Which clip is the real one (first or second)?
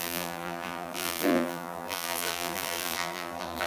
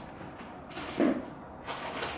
second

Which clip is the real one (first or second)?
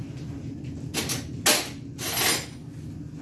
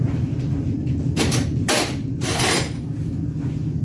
first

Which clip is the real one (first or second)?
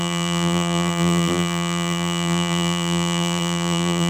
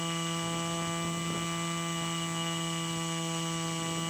second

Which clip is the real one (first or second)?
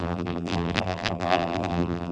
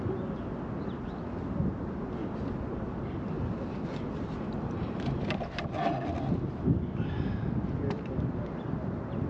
second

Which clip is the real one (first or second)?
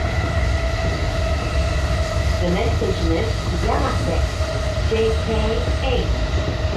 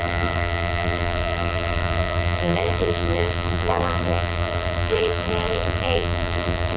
first